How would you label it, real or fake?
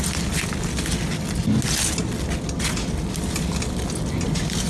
real